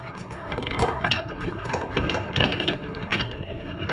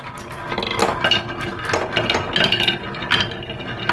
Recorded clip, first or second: second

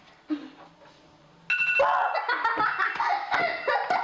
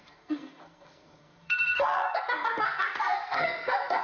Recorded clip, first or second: first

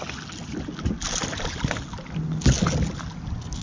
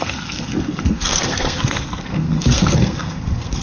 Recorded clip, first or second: first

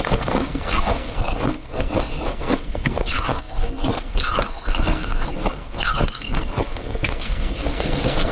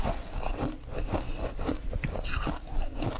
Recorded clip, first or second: second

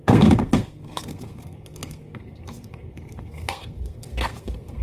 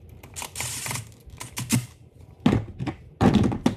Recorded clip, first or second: second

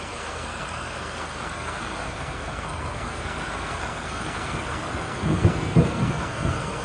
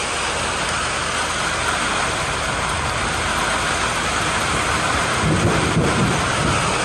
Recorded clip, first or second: second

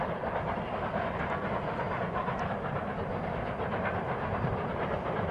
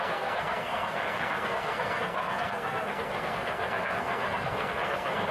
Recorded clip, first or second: first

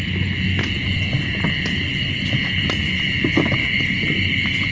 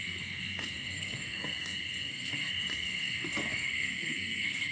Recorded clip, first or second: first